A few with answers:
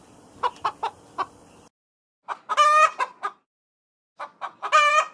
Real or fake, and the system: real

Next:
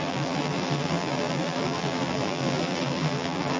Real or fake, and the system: fake, vocoder, BigVGAN v2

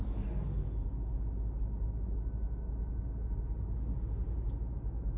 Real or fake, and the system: real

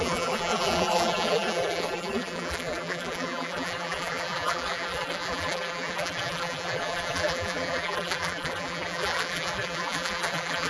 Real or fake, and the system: fake, vocoder, BigVGAN v2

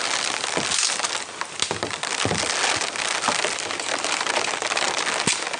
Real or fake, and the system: real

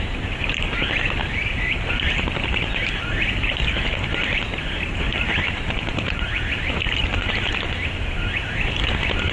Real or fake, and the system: fake, vocoder, BigVGAN v2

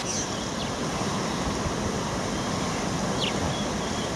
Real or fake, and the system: fake, vocoder, BigVGAN v2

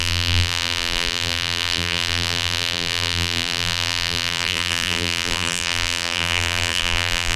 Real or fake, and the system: fake, vocoder, BigVGAN v2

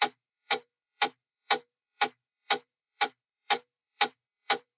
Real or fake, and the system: fake, vocoder, BigVGAN v2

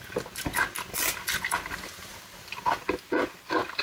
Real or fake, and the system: real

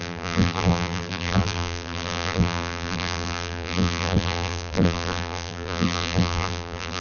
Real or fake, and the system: fake, vocoder, BigVGAN v2